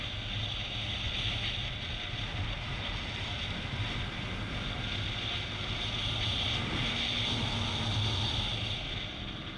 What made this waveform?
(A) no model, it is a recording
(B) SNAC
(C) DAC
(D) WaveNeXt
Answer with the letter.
A